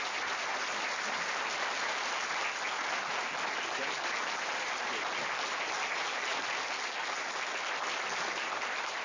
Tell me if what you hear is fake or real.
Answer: real